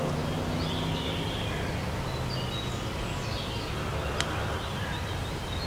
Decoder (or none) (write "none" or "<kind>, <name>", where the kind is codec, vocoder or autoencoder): none